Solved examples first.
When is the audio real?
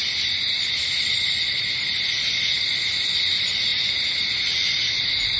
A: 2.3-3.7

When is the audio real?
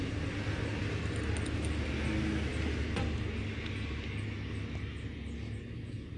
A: 0.0-6.2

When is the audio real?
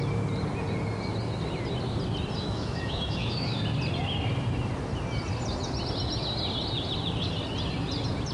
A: 0.0-2.4; 3.6-8.3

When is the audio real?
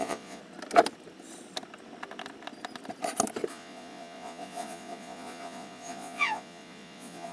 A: 0.4-3.5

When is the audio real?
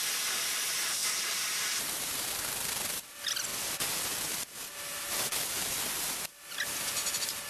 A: 0.0-3.5; 4.4-4.9; 6.6-7.5